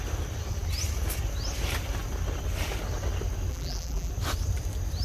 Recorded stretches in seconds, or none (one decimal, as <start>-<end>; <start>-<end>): 0.0-3.5; 4.1-5.0